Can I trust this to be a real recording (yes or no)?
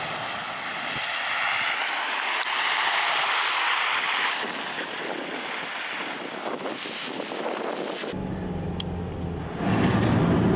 yes